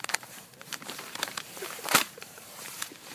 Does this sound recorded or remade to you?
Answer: remade